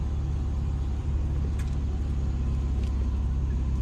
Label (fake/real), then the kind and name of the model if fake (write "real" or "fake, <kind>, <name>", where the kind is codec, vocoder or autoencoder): real